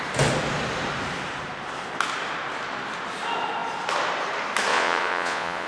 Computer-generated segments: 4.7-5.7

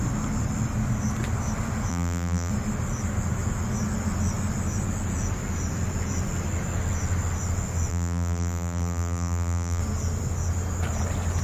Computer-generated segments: 1.9-2.5; 7.9-9.8